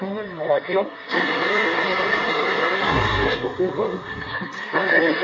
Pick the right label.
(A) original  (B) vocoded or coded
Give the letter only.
B